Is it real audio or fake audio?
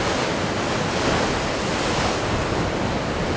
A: real